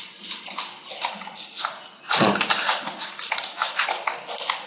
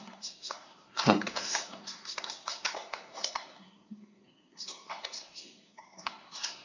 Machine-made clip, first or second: second